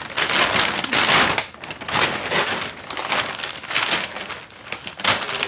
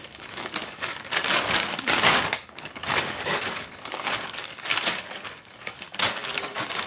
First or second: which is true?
first